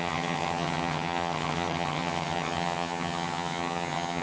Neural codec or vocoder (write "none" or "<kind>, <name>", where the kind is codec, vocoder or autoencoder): vocoder, HiFi-GAN